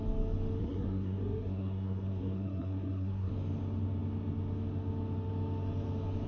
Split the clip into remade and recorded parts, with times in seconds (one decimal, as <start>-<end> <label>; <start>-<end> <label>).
0.0-0.6 recorded; 0.6-3.3 remade; 3.3-6.3 recorded